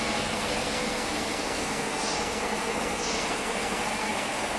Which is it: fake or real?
fake